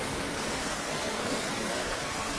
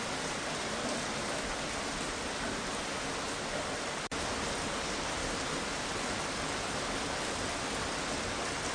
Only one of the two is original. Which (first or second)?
second